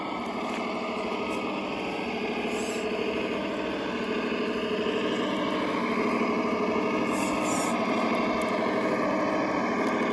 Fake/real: real